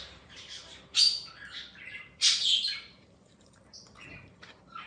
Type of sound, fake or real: fake